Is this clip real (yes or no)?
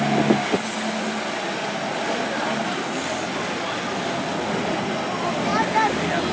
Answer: yes